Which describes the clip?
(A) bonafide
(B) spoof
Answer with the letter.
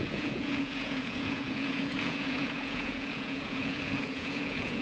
B